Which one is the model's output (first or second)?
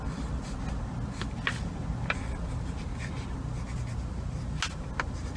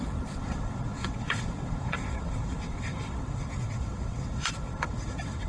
second